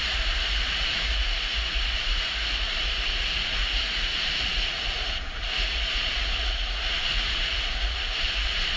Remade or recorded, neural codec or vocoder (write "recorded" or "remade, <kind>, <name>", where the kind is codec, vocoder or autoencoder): remade, vocoder, Vocos